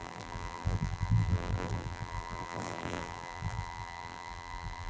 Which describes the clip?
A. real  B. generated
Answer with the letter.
B